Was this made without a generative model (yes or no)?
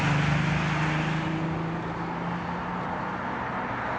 yes